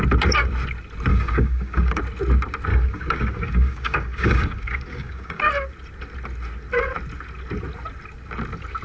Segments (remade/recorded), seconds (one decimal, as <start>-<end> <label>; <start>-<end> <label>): 0.0-1.1 recorded; 1.1-2.0 remade; 2.0-2.7 recorded; 2.7-5.4 remade; 5.4-8.8 recorded